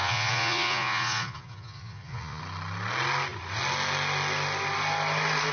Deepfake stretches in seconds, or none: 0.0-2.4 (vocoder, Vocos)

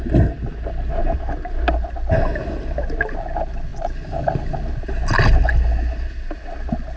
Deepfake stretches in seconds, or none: none

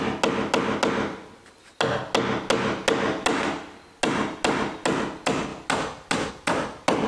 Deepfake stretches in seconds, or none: none

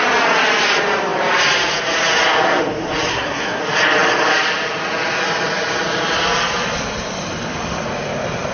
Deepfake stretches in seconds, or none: 3.1-3.6 (codec, SNAC)

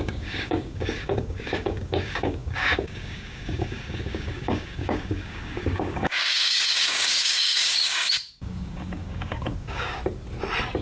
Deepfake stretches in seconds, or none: 0.0-10.0 (codec, DAC)

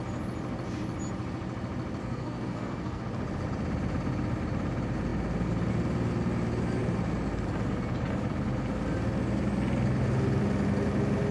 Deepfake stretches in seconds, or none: 2.0-3.0 (codec, SNAC)

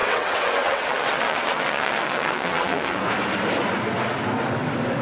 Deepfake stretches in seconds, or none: 0.0-3.0 (vocoder, WaveNeXt)